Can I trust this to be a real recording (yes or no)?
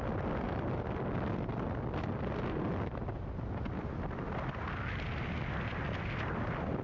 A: yes